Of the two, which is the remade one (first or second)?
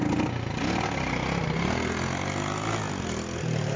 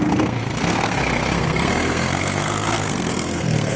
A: second